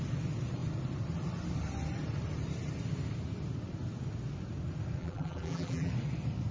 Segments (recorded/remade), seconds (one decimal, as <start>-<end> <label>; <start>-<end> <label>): 0.0-5.0 recorded; 5.0-5.9 remade; 5.9-6.5 recorded